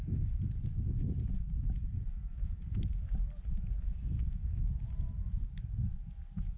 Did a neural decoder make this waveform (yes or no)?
no